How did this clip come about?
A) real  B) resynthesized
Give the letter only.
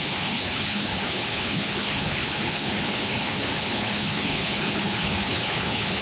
B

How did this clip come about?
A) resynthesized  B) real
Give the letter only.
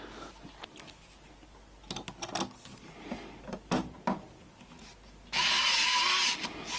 B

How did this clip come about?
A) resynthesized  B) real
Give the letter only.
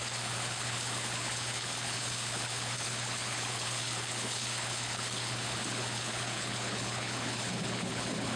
A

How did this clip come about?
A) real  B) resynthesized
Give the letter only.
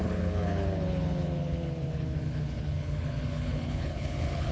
B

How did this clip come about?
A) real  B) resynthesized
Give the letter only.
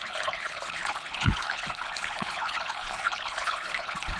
B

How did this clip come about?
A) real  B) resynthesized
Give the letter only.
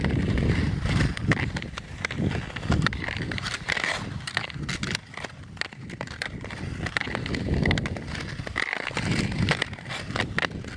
A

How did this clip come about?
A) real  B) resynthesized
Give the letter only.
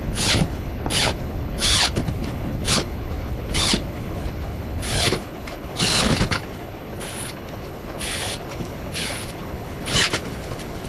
B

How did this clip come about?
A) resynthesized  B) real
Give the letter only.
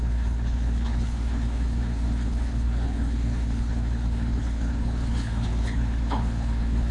A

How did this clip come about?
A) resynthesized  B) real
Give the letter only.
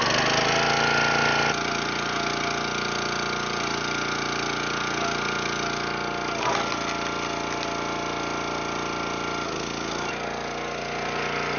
B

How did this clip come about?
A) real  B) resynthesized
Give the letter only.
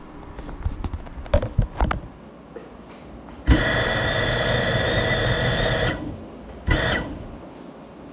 A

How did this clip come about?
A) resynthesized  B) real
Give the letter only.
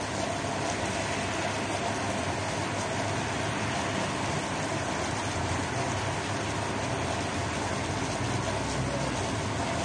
B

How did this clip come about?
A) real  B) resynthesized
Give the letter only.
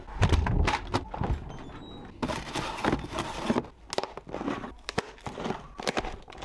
A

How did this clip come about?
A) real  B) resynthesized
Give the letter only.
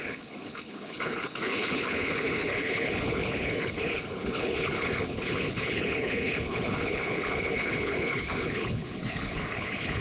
B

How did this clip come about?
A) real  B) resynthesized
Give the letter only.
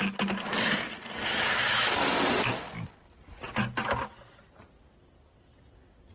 A